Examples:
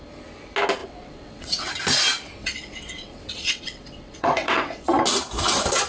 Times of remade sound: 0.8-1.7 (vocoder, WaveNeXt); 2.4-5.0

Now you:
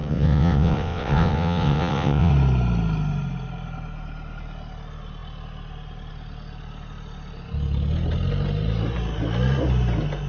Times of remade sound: 0.0-2.3 (vocoder, WaveNeXt)